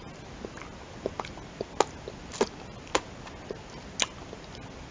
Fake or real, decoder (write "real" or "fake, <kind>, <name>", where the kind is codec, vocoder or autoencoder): real